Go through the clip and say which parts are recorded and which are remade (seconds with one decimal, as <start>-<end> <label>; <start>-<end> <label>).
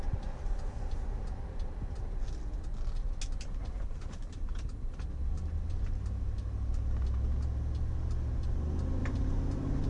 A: 0.0-3.6 recorded; 3.6-4.2 remade; 4.2-9.0 recorded; 9.0-9.9 remade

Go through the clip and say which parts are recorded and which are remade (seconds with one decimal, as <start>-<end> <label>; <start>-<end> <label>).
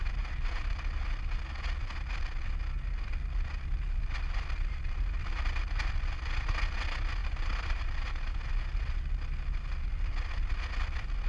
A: 0.0-7.2 recorded; 7.2-8.4 remade; 8.4-11.3 recorded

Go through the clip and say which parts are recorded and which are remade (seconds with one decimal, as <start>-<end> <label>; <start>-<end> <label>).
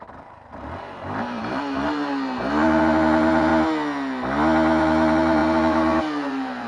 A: 0.0-3.5 remade; 3.5-4.8 recorded; 4.8-6.7 remade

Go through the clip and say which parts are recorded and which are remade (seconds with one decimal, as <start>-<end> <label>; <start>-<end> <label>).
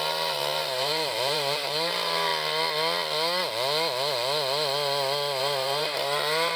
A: 0.0-2.3 remade; 2.3-5.4 recorded; 5.4-6.6 remade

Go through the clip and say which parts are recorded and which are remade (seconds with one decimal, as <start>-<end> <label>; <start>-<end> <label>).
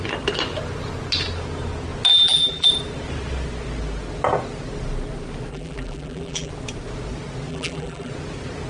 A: 0.0-2.1 recorded; 2.1-2.7 remade; 2.7-5.5 recorded; 5.5-6.5 remade; 6.5-7.5 recorded; 7.5-8.1 remade; 8.1-8.7 recorded